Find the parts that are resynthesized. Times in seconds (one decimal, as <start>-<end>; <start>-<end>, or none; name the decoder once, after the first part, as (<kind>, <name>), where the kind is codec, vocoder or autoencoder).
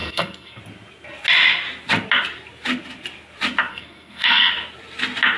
0.0-0.6 (codec, SNAC); 3.7-4.5